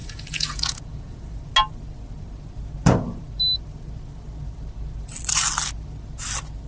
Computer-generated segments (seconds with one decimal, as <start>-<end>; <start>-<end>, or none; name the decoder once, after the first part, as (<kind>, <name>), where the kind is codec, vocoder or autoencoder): 0.0-1.3 (vocoder, Vocos)